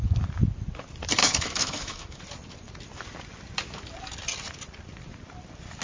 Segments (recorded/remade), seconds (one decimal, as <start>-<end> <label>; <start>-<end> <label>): 0.0-1.2 recorded; 1.2-2.2 remade; 2.2-5.8 recorded

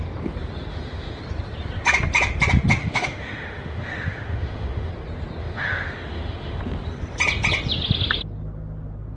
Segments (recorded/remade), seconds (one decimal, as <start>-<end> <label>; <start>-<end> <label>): 0.0-0.7 recorded; 0.7-1.2 remade; 1.2-2.8 recorded; 2.8-4.9 remade; 4.9-5.4 recorded; 5.4-6.6 remade; 6.6-9.2 recorded

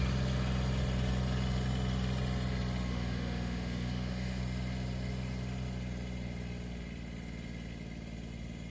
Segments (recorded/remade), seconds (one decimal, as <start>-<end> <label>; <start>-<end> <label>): 0.0-2.9 recorded; 2.9-4.4 remade; 4.4-8.7 recorded